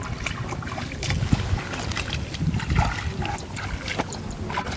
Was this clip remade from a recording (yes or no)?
no